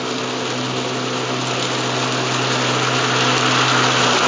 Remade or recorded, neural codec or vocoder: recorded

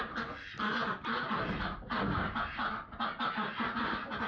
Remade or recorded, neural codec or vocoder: recorded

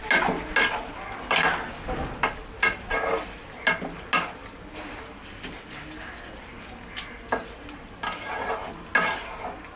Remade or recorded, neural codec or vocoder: recorded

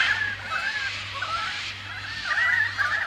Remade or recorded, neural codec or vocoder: recorded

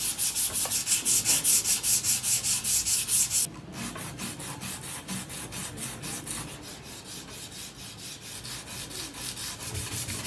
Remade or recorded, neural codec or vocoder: recorded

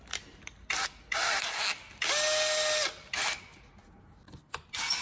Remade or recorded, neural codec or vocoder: recorded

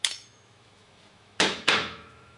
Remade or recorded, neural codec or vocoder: remade, autoencoder, DAC-VAE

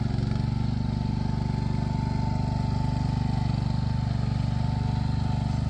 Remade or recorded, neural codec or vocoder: recorded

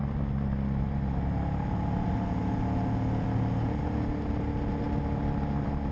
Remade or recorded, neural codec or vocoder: recorded